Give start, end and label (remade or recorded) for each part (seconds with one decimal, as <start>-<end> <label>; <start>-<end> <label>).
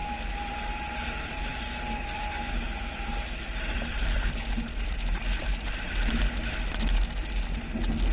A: 0.0-1.5 recorded; 1.5-5.2 remade; 5.2-8.1 recorded